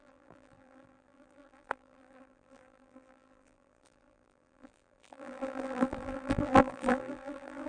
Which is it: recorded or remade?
remade